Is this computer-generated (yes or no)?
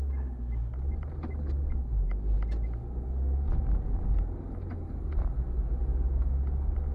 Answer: no